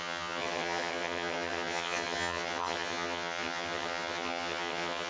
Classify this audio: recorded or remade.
remade